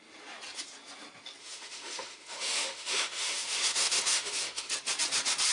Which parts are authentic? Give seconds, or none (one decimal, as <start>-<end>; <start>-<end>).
0.0-1.4; 4.7-5.5